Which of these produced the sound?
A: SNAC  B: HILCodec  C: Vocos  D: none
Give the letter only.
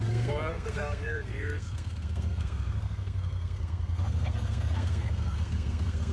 A